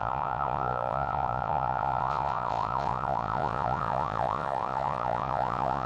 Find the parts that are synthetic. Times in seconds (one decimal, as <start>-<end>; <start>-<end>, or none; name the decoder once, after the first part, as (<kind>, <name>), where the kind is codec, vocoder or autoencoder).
0.0-5.9 (vocoder, Vocos)